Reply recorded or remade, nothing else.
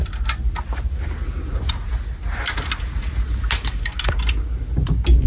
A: recorded